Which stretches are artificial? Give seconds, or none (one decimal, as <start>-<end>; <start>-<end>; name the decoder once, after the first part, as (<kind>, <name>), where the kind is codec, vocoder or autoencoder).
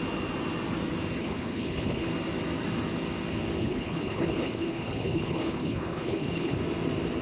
1.2-2.1 (codec, HILCodec); 3.6-6.6